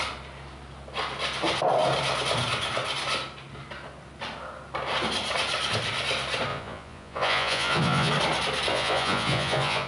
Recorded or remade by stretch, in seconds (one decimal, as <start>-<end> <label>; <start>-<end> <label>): 0.0-6.5 recorded; 6.5-8.1 remade; 8.1-8.7 recorded; 8.7-9.9 remade